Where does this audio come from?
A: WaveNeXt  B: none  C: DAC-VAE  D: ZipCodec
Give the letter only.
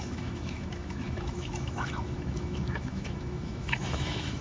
C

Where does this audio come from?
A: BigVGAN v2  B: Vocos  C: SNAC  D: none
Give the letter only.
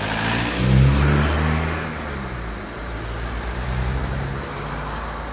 D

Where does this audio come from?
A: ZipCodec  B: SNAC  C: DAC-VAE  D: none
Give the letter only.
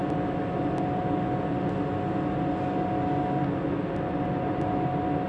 D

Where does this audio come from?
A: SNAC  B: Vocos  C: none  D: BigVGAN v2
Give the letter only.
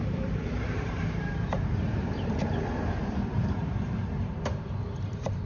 D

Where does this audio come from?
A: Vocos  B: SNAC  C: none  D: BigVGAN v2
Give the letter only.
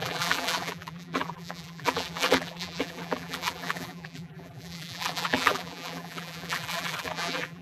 D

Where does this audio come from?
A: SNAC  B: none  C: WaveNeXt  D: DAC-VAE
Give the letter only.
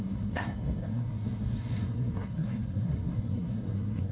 A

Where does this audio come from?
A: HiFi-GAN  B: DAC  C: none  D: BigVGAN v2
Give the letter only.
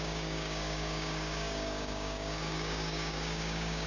B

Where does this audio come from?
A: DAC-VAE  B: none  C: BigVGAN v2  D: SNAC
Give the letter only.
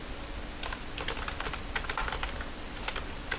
B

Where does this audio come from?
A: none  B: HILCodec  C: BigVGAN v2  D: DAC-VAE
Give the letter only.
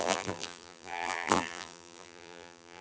C